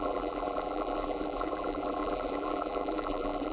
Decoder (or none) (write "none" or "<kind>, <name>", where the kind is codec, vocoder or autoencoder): vocoder, BigVGAN v2